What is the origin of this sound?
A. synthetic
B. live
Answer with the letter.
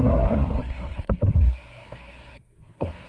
A